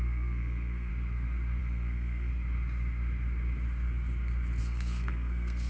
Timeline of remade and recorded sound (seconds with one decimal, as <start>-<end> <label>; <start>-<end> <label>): 0.0-0.9 remade; 0.9-1.6 recorded; 1.6-2.3 remade; 2.3-4.6 recorded; 4.6-5.7 remade